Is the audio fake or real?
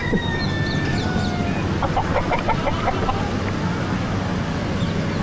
real